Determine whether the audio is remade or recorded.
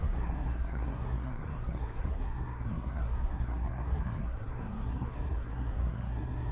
remade